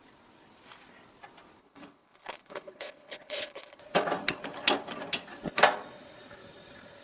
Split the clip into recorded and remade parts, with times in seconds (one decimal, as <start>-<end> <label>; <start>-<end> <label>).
0.0-1.6 recorded; 1.6-3.8 remade; 3.8-7.0 recorded